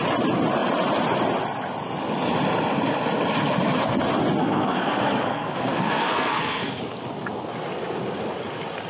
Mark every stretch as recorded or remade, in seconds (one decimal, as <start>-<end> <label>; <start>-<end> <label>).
0.0-4.4 recorded; 4.4-6.8 remade; 6.8-8.9 recorded